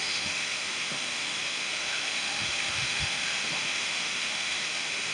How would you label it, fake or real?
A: fake